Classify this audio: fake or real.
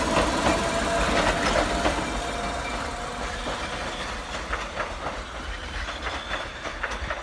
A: real